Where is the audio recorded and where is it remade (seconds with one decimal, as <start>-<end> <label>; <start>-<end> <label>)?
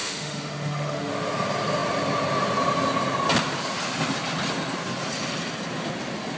0.0-1.1 remade; 1.1-6.4 recorded